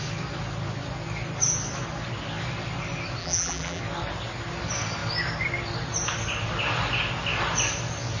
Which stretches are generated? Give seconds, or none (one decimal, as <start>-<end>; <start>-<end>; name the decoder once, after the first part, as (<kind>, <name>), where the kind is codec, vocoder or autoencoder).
3.2-3.8 (vocoder, BigVGAN v2)